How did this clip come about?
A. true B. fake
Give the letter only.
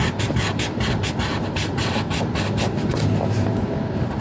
A